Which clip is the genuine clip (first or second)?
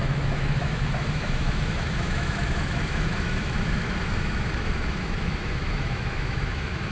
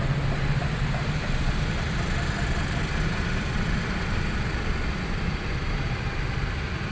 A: second